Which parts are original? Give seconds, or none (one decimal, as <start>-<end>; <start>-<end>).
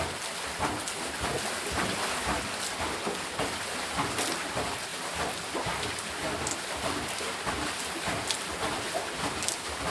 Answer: 0.0-4.9; 5.4-9.9